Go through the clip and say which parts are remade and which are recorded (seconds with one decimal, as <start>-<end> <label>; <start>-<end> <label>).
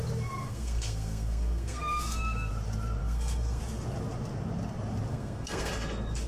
0.0-0.4 recorded; 0.4-2.5 remade; 2.5-3.0 recorded; 3.0-3.6 remade; 3.6-5.1 recorded; 5.1-5.7 remade; 5.7-6.3 recorded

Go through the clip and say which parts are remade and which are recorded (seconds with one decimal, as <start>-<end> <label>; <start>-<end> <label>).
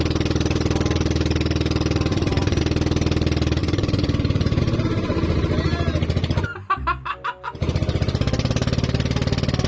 0.0-2.1 recorded; 2.1-2.6 remade; 2.6-3.6 recorded; 3.6-4.6 remade; 4.6-9.7 recorded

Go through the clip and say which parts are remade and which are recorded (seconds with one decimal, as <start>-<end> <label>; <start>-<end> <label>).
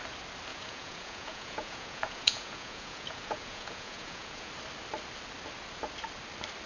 0.0-0.5 recorded; 0.5-4.5 remade; 4.5-6.7 recorded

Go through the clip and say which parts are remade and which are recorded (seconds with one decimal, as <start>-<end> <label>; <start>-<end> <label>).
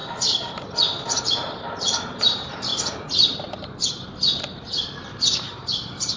0.0-2.7 remade; 2.7-3.9 recorded; 3.9-6.2 remade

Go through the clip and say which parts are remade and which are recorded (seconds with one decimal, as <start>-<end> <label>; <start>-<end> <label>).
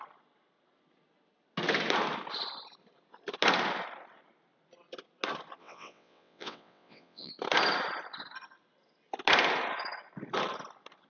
0.0-5.6 recorded; 5.6-7.3 remade; 7.3-11.1 recorded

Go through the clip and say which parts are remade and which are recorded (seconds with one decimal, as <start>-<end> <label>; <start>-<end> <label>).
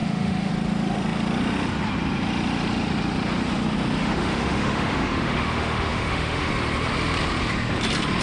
0.0-0.5 remade; 0.5-4.0 recorded; 4.0-6.5 remade; 6.5-8.2 recorded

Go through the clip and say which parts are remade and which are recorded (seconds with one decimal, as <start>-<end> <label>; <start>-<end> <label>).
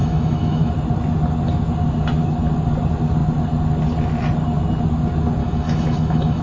0.0-0.7 remade; 0.7-5.4 recorded; 5.4-6.4 remade